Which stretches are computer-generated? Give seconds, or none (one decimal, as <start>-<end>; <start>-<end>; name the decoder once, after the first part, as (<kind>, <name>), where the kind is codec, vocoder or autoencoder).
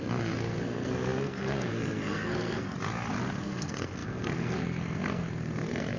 0.0-2.7 (codec, SNAC); 3.4-6.0